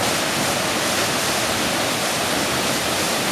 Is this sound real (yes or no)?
yes